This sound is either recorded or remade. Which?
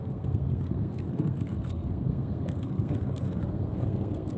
remade